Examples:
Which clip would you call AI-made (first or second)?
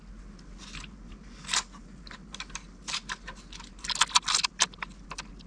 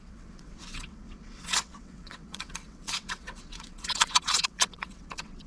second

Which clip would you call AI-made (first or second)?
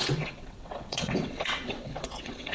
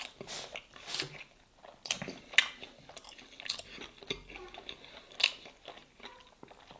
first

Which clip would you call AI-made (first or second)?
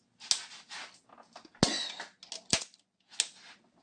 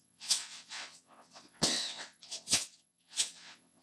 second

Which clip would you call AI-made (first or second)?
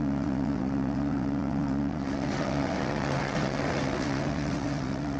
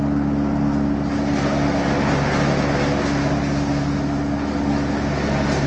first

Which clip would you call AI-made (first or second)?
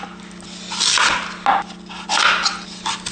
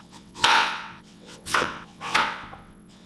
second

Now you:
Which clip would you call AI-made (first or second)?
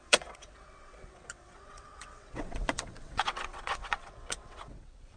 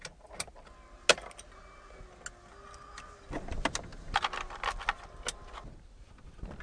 first